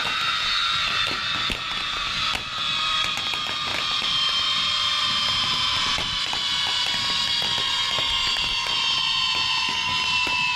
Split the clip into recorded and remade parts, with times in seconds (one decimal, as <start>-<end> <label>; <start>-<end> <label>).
0.0-3.7 recorded; 3.7-6.3 remade; 6.3-10.6 recorded